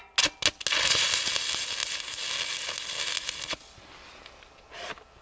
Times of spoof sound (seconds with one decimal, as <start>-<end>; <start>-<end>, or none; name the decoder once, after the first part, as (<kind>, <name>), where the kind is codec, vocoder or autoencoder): none